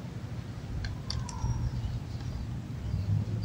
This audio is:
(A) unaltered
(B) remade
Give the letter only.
A